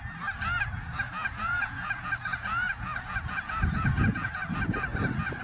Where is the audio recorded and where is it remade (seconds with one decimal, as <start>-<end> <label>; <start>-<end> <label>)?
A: 0.0-1.2 recorded; 1.2-4.3 remade; 4.3-5.4 recorded